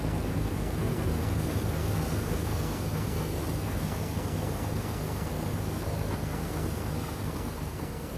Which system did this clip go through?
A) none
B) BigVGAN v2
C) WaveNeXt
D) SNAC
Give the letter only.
D